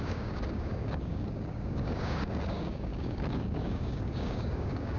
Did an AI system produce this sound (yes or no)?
yes